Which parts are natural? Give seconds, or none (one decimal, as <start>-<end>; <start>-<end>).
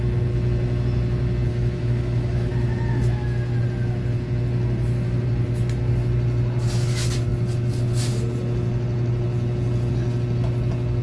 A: 0.0-1.5; 2.5-11.0